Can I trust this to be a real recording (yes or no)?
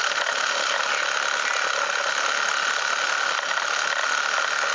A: yes